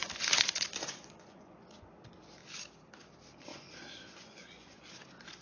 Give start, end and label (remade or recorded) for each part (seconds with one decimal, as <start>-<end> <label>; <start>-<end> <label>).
0.0-1.9 remade; 1.9-3.5 recorded; 3.5-4.9 remade; 4.9-5.4 recorded

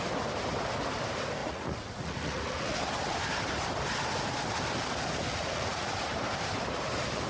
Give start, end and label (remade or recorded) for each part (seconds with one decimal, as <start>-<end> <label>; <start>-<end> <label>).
0.0-1.4 recorded; 1.4-2.8 remade; 2.8-5.3 recorded; 5.3-5.9 remade; 5.9-7.3 recorded

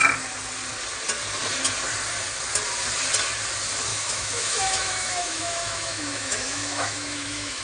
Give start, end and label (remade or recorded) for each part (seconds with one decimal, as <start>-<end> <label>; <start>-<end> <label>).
0.0-3.9 recorded; 3.9-7.6 remade

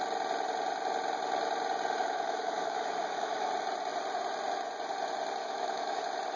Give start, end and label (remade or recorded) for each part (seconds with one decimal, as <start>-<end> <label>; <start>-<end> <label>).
0.0-2.0 recorded; 2.0-3.5 remade; 3.5-5.4 recorded; 5.4-6.0 remade; 6.0-6.4 recorded

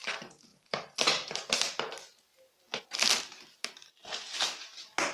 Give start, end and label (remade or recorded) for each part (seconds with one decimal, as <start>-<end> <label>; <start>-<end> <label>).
0.0-2.3 remade; 2.3-3.2 recorded; 3.2-4.0 remade; 4.0-4.6 recorded; 4.6-5.1 remade

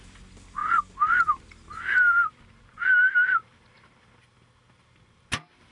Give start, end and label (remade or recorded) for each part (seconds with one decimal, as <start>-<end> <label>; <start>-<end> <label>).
0.0-5.7 recorded

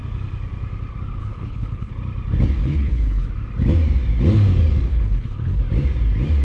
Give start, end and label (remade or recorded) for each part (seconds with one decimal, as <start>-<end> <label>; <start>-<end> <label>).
0.0-1.2 recorded; 1.2-1.9 remade; 1.9-2.6 recorded; 2.6-3.3 remade; 3.3-4.9 recorded; 4.9-5.6 remade; 5.6-6.4 recorded